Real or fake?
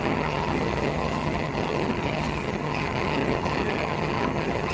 fake